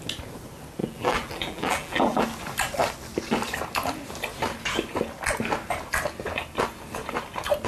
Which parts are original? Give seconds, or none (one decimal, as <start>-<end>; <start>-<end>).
0.0-0.8; 2.2-7.7